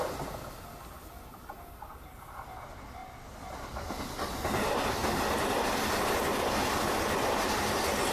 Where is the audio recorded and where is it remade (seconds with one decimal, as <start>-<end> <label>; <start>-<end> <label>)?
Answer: 0.0-8.1 recorded